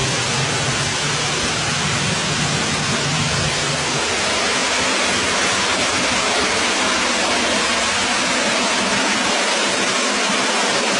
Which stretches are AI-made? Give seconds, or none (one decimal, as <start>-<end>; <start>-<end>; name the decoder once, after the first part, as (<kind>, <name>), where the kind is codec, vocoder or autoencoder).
none

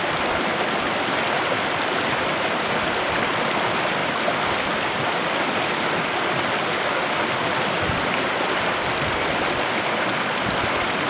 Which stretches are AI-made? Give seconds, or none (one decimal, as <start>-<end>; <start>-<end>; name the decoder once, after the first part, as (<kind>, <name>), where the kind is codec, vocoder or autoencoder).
none

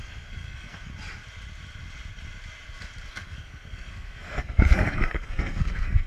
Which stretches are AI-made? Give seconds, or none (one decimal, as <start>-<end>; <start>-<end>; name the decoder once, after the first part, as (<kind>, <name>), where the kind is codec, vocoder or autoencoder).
0.0-0.9 (codec, SNAC); 3.1-6.1